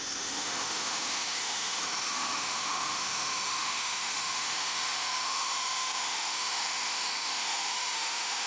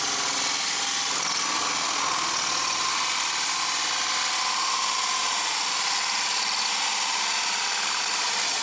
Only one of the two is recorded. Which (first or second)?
second